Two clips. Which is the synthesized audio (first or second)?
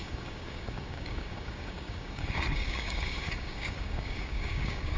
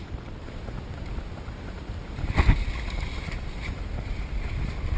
first